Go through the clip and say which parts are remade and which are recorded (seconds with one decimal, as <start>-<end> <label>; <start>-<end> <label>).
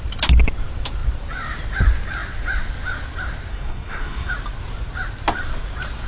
0.0-3.5 recorded; 3.5-4.3 remade; 4.3-6.1 recorded